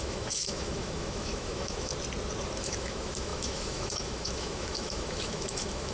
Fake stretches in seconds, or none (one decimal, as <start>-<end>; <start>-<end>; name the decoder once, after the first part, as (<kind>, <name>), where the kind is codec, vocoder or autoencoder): 0.0-1.9 (autoencoder, DAC-VAE); 2.6-5.9